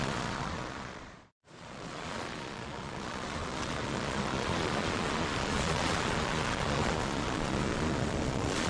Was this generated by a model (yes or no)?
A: yes